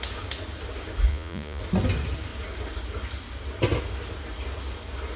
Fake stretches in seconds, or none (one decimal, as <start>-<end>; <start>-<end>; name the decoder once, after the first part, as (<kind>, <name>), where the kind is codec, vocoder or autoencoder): 1.1-1.6 (vocoder, Vocos)